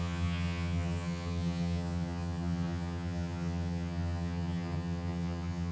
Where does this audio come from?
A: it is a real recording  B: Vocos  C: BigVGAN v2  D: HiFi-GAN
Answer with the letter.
D